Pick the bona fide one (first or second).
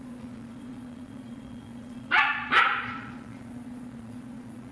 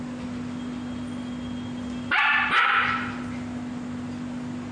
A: second